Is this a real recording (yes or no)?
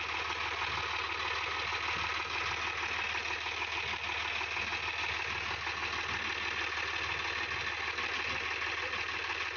yes